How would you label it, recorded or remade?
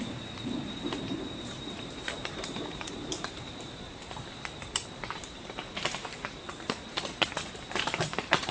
remade